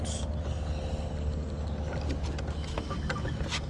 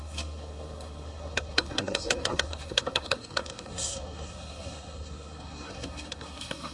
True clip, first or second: first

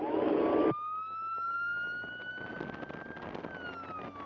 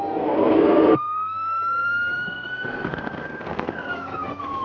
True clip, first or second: first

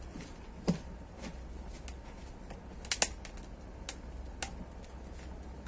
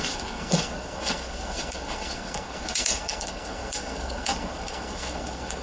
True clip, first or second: first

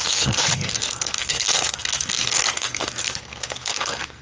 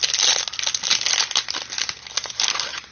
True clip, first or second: second